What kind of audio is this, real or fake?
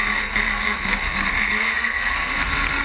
fake